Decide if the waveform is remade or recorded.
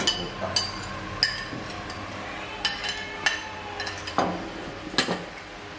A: recorded